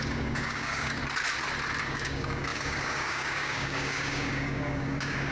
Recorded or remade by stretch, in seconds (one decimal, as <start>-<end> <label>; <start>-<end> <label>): 0.0-1.0 remade; 1.0-1.8 recorded; 1.8-5.3 remade